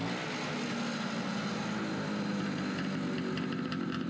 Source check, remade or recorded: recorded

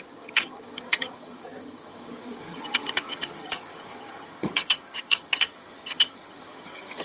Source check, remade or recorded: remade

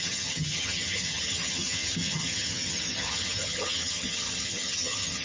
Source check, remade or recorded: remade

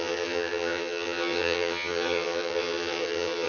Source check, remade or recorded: remade